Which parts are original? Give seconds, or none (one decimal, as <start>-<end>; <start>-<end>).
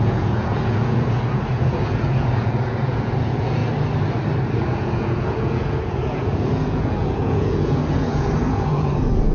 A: 3.6-4.6